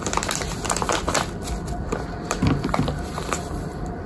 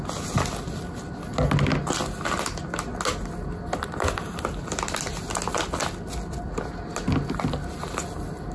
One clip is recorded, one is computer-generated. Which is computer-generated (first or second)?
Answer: first